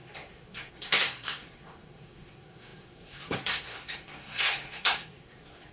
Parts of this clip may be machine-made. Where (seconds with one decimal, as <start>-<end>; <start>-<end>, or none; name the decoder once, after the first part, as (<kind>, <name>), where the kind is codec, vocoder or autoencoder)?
0.0-5.7 (codec, SNAC)